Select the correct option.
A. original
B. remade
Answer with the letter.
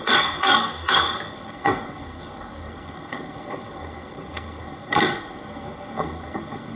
B